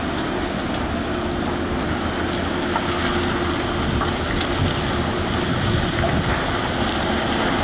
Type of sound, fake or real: real